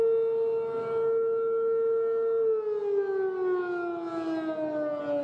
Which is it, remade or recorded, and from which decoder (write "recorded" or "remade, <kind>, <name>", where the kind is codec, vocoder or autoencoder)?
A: recorded